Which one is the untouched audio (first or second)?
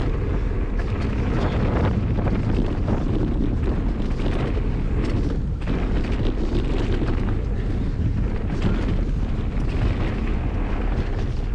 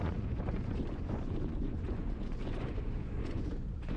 first